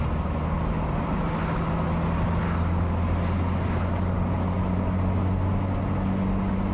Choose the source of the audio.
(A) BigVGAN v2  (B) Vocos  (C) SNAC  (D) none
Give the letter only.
D